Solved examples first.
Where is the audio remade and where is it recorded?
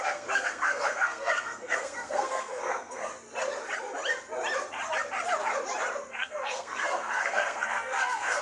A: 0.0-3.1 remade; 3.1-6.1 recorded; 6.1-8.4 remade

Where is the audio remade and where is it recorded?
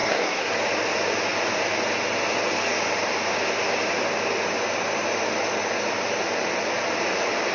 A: 0.0-0.5 remade; 0.5-7.5 recorded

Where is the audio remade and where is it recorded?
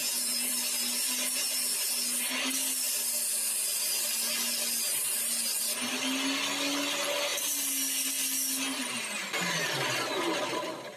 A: 0.0-0.5 remade; 0.5-11.0 recorded